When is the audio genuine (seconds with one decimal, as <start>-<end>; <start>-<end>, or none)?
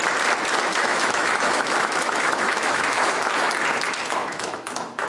0.0-0.7; 3.5-4.2